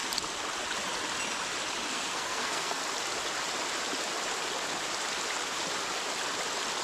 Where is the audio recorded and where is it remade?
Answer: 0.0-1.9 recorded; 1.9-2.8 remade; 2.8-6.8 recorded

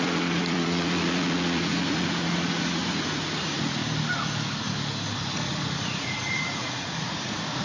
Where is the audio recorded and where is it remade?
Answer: 0.0-3.8 remade; 3.8-5.3 recorded; 5.3-7.6 remade